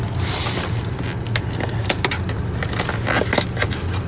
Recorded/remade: recorded